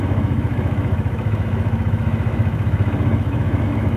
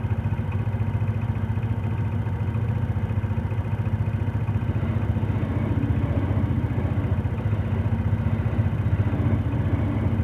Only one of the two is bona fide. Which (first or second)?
second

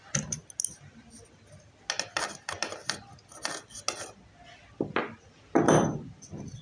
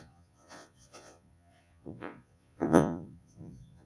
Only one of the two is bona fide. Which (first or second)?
first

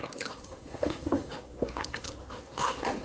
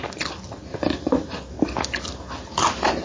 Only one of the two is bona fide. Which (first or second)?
second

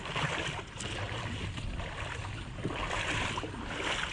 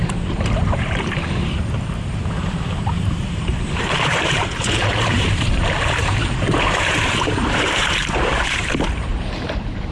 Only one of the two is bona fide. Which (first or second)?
first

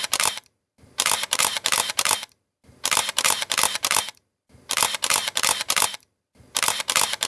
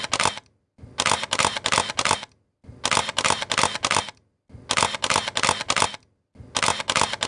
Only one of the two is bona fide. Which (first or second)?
second